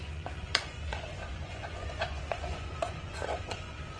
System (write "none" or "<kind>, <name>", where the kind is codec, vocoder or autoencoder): vocoder, Vocos